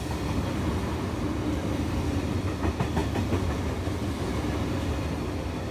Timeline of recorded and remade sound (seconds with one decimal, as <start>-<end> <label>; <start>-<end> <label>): 0.0-5.7 recorded